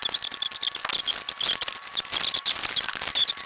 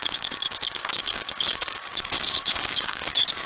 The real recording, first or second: first